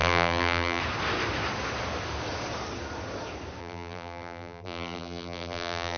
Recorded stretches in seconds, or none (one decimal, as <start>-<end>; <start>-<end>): 0.8-3.6